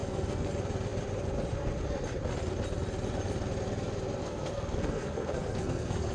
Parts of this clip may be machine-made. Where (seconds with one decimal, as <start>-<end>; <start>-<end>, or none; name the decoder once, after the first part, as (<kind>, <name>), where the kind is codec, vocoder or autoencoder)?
0.0-0.5 (codec, SNAC); 4.2-6.1